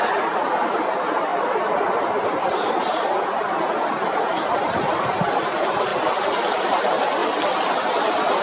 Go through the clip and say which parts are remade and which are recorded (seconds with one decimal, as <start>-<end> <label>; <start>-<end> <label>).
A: 0.0-1.3 remade; 1.3-2.2 recorded; 2.2-5.9 remade; 5.9-6.5 recorded; 6.5-7.2 remade; 7.2-8.4 recorded